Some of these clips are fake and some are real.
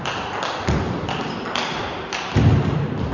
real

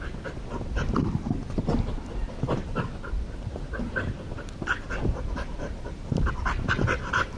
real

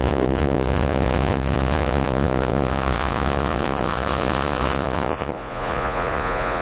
fake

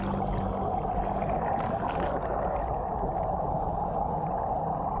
real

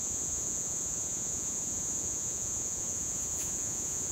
fake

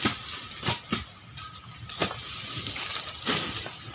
real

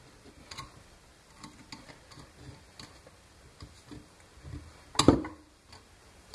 real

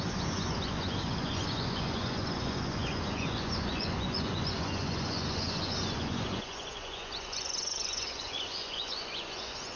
fake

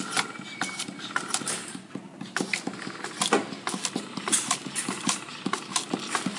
real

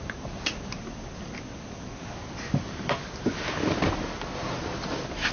real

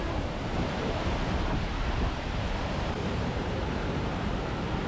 fake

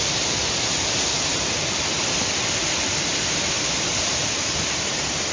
real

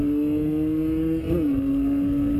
fake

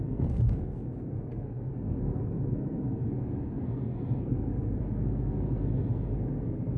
fake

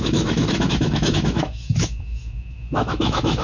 fake